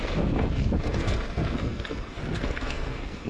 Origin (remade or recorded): remade